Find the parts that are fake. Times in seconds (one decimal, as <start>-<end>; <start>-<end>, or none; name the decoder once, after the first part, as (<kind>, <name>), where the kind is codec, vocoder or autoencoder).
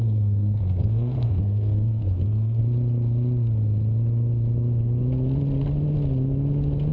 0.0-2.6 (codec, SNAC)